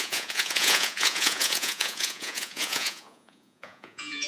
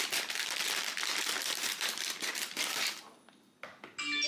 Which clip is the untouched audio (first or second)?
second